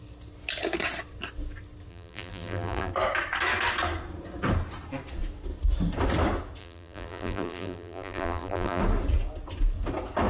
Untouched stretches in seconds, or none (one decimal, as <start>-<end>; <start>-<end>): 0.0-1.9; 2.9-6.6; 8.8-10.3